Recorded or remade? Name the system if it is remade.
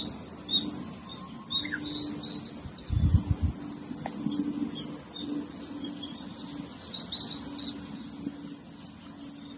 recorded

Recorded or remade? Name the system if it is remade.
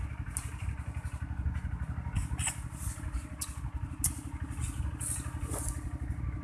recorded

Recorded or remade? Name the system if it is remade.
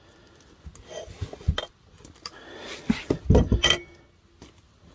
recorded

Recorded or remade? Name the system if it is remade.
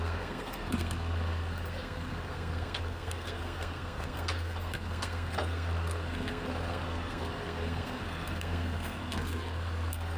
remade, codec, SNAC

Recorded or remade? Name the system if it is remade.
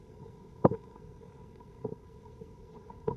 remade, codec, SNAC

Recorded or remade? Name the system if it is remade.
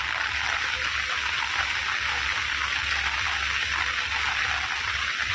recorded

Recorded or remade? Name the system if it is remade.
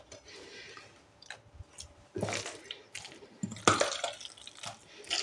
recorded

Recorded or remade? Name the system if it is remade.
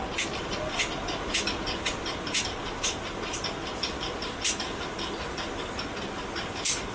recorded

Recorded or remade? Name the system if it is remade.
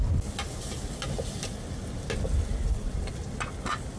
recorded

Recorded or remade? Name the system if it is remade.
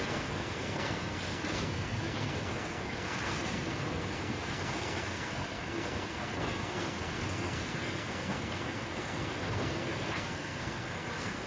remade, codec, SNAC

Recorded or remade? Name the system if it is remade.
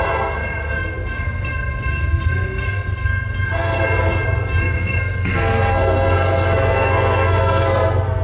remade, codec, SNAC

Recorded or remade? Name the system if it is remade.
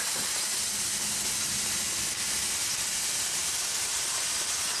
recorded